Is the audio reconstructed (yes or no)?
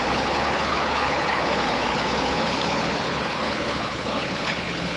yes